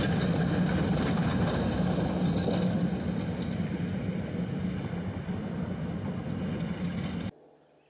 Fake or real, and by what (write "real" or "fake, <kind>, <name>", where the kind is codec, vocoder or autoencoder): real